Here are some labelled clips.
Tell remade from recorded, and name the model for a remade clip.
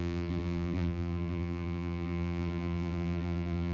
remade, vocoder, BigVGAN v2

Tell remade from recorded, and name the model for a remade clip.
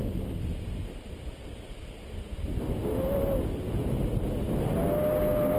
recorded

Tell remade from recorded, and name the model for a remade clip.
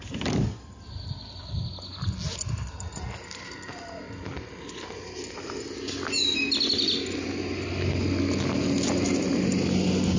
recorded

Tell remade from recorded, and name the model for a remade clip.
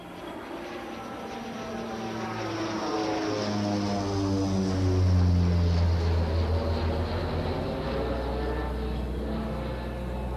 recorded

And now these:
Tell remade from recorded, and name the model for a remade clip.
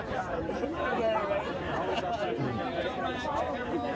remade, vocoder, BigVGAN v2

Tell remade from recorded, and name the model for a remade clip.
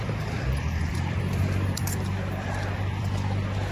remade, vocoder, BigVGAN v2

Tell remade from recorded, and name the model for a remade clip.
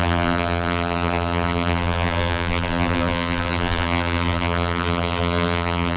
remade, vocoder, BigVGAN v2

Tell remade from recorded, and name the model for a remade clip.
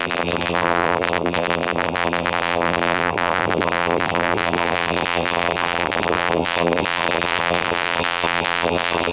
remade, vocoder, BigVGAN v2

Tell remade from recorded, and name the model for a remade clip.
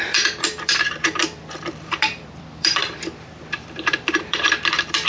remade, vocoder, BigVGAN v2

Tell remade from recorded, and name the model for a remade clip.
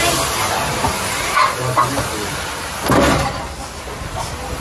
recorded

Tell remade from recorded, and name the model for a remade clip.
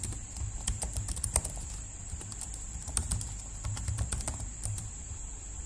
remade, vocoder, BigVGAN v2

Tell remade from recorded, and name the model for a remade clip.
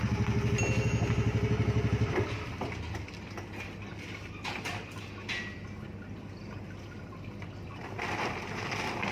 recorded